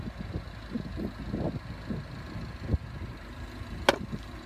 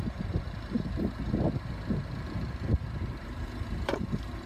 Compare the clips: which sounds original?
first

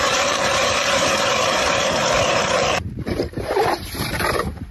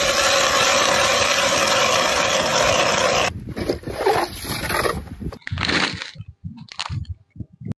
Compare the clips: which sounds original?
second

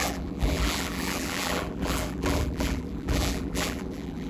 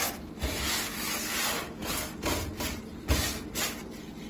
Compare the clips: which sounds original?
second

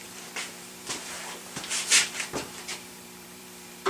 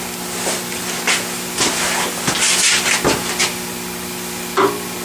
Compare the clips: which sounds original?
second